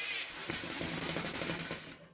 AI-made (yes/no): no